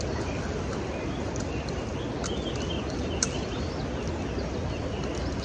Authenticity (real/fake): real